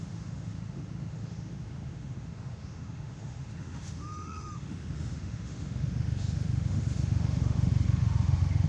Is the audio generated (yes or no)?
yes